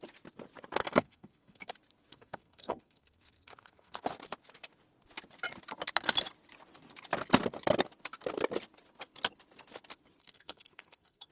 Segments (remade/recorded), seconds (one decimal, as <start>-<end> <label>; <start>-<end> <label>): 0.0-0.8 recorded; 0.8-1.7 remade; 1.7-2.1 recorded; 2.1-4.0 remade; 4.0-10.2 recorded; 10.2-11.3 remade